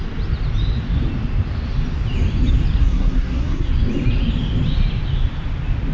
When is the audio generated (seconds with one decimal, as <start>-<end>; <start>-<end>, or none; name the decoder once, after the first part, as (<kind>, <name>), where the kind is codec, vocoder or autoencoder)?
2.8-3.7 (codec, SNAC)